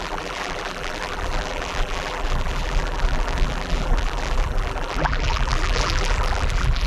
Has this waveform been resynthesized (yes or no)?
yes